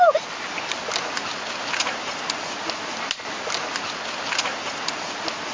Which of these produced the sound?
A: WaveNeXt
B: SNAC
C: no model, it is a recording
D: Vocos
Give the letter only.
C